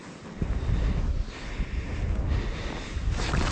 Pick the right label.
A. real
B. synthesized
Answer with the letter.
A